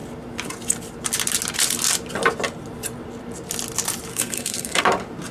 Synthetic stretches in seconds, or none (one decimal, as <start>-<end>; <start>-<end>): 4.1-4.8